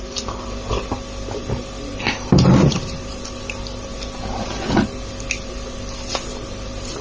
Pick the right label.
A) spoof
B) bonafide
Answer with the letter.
B